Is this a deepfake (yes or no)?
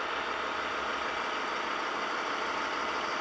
no